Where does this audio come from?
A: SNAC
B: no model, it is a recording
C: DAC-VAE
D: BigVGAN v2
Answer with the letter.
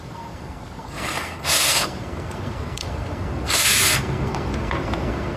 A